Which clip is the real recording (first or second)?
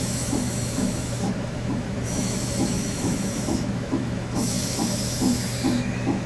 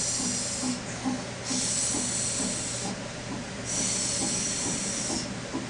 second